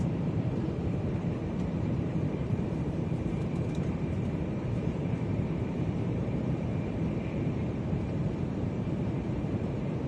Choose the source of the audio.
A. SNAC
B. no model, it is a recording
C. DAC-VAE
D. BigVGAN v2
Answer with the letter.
D